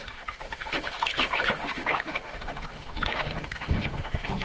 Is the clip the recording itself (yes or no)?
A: no